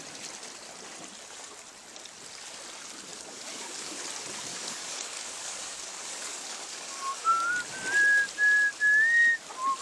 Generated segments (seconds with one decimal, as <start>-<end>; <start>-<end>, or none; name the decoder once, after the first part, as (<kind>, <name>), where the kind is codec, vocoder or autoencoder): 3.1-4.0 (codec, DAC); 4.5-7.5

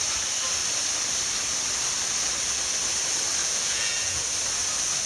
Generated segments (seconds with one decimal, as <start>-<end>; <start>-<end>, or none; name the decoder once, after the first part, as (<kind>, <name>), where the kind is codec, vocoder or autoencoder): 3.4-4.2 (vocoder, Vocos)

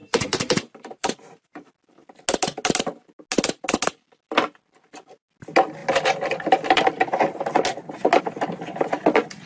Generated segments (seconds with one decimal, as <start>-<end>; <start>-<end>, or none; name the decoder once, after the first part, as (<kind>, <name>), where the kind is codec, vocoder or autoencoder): 0.0-1.7 (vocoder, BigVGAN v2)

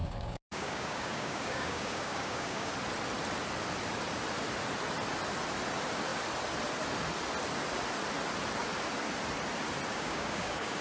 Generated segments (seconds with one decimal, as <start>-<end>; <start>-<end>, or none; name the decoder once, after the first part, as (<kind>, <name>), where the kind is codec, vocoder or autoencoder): 0.0-2.7 (codec, DAC); 9.9-10.8

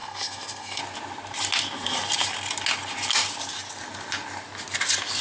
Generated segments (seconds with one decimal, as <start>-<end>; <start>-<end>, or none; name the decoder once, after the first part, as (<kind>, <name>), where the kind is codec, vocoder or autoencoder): 0.0-0.8 (codec, SNAC)

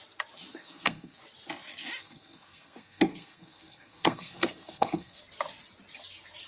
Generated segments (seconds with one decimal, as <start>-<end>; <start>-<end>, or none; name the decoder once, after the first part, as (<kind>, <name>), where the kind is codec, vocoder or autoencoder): 0.5-1.2 (codec, SNAC); 2.0-5.2

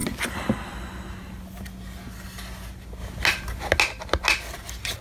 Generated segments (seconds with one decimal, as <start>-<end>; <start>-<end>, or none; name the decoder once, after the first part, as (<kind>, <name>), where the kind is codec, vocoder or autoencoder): none